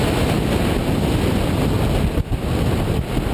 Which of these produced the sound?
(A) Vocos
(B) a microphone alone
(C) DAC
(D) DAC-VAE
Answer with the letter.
B